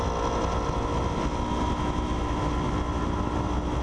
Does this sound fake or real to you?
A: real